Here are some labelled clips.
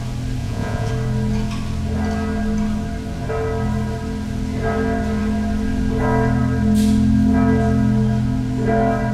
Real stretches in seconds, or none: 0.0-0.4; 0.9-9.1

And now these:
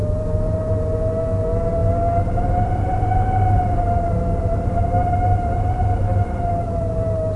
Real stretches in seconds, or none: 0.0-7.4

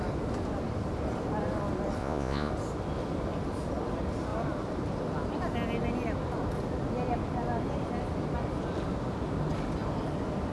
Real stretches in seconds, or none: 0.0-2.0; 2.5-10.5